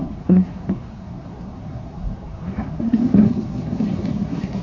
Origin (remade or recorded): remade